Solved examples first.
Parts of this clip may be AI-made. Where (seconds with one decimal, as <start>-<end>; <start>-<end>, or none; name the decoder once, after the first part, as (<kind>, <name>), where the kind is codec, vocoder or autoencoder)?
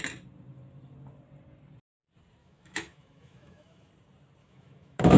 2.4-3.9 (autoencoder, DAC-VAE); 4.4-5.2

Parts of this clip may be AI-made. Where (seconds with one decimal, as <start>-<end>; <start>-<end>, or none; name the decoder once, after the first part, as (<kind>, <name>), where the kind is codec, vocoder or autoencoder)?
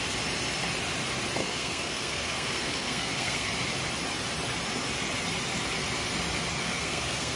1.4-3.5 (codec, SNAC); 6.6-7.4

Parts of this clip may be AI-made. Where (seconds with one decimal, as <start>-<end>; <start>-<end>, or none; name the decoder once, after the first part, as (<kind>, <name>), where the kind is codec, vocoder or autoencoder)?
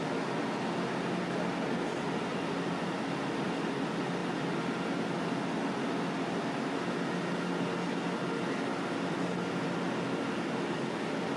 none